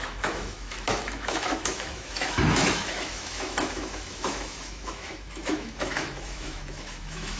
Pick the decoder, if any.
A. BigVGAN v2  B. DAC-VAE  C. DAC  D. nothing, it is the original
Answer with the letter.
B